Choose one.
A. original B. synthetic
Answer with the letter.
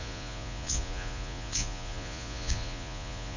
B